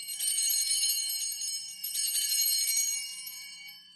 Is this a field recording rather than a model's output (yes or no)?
no